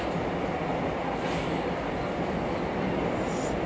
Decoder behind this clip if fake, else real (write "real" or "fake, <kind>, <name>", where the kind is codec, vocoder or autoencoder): real